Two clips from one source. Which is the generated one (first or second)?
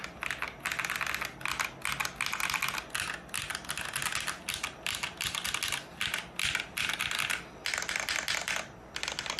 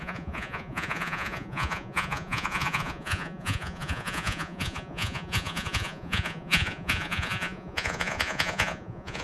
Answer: second